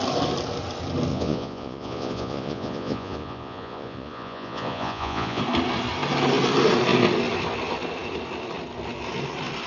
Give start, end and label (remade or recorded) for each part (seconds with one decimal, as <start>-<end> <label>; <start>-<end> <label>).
0.0-1.1 recorded; 1.1-5.4 remade; 5.4-9.7 recorded